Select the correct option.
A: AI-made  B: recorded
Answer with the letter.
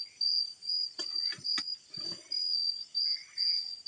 B